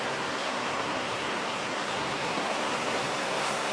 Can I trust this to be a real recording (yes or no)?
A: no